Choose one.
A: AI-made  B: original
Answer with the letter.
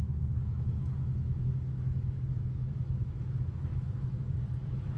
A